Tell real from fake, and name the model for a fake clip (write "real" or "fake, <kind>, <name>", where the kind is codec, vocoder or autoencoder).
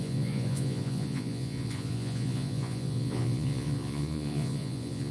fake, vocoder, Vocos